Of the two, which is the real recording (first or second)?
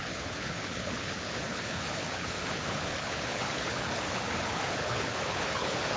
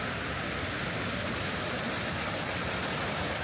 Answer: second